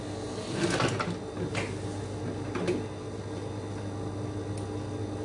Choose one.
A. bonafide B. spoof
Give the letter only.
A